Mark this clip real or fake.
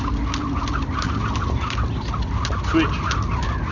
real